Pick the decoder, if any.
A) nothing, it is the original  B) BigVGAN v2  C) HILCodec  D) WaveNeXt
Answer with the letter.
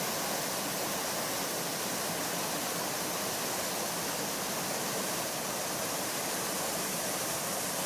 A